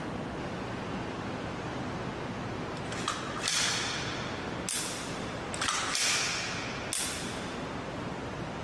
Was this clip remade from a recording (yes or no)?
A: no